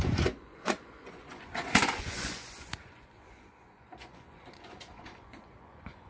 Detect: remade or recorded remade